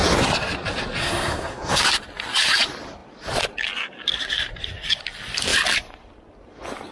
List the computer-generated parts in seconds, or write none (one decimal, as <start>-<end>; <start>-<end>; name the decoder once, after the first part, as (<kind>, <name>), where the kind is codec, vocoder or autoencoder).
1.0-1.8 (codec, SNAC)